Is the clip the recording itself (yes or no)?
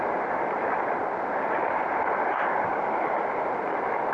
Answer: yes